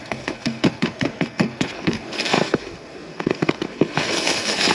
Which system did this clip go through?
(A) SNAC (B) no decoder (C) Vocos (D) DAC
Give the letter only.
A